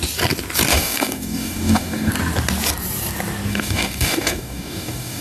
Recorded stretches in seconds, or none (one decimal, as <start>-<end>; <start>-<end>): 0.0-0.7; 2.1-3.5